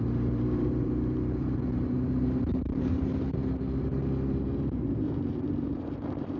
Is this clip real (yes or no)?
no